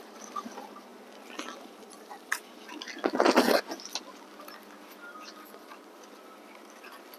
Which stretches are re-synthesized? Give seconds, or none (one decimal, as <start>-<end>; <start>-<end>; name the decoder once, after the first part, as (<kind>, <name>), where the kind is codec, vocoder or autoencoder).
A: none